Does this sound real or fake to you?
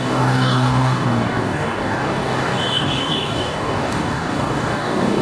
fake